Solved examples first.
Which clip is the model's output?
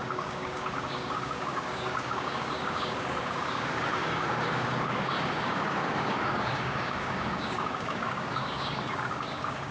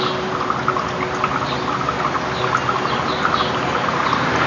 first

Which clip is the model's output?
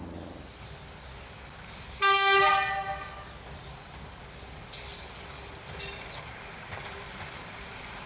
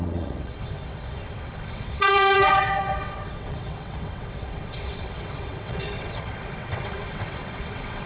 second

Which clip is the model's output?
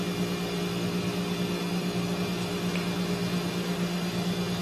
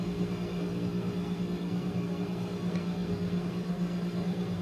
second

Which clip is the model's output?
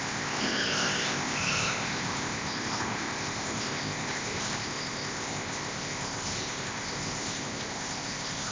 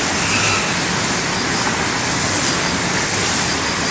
first